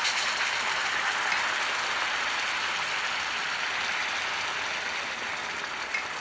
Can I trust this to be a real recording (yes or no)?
yes